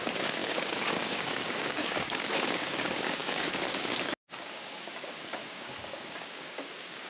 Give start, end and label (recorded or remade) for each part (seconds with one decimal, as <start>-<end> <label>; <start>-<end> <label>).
0.0-7.1 remade